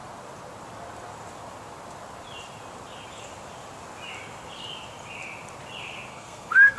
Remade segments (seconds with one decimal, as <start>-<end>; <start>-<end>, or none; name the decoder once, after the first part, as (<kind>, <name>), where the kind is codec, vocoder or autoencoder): 6.1-6.8 (codec, SNAC)